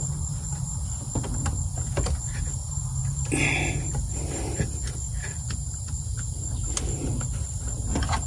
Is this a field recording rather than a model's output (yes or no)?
yes